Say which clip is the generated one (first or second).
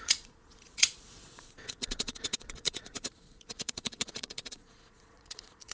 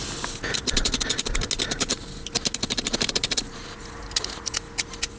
first